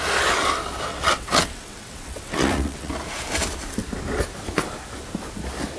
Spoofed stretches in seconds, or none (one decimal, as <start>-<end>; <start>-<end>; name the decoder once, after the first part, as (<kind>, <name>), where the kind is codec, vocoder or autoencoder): 0.9-2.9 (vocoder, WaveNeXt)